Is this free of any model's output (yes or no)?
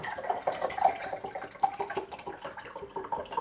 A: yes